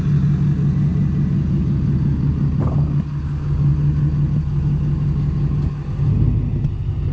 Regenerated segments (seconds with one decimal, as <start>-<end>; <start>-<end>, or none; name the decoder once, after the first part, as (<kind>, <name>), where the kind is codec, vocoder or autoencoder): none

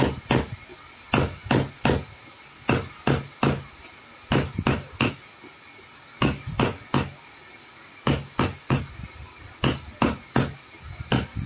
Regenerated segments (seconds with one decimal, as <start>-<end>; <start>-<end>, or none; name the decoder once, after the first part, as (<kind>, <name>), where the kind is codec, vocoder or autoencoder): none

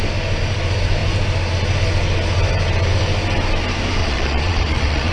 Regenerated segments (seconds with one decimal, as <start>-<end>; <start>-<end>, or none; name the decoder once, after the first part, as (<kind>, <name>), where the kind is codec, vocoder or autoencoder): 4.0-5.1 (vocoder, Vocos)

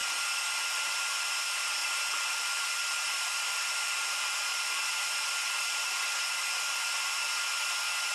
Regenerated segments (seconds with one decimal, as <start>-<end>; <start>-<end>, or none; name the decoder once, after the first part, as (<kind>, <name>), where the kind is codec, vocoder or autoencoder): none

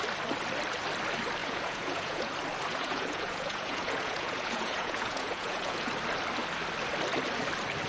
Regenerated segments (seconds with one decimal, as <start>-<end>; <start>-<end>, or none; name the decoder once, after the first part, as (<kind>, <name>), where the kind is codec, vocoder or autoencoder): 1.4-2.3 (vocoder, Vocos); 2.7-5.9

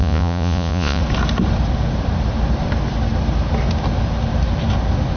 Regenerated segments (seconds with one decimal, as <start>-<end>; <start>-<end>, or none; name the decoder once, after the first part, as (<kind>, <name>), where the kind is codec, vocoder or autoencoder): 0.0-1.0 (vocoder, Vocos)

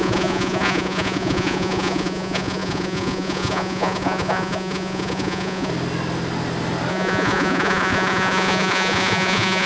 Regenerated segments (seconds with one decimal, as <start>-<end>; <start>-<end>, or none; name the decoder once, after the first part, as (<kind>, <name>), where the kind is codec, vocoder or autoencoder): 0.0-5.7 (vocoder, Vocos); 6.9-9.7